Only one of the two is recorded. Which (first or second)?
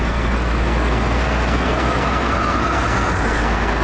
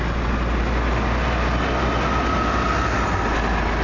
second